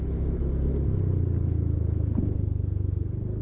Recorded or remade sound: recorded